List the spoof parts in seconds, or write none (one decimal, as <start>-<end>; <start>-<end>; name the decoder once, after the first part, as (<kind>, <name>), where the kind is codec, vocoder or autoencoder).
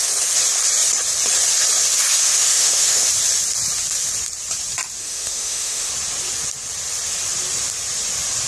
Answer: 2.1-3.1 (autoencoder, DAC-VAE); 5.0-5.9